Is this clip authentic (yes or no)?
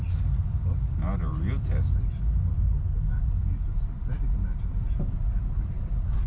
yes